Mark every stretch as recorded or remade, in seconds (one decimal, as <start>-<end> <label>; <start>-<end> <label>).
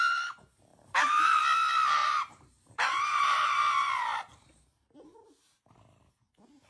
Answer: 0.0-0.7 recorded; 0.7-1.4 remade; 1.4-2.0 recorded; 2.0-6.0 remade; 6.0-6.7 recorded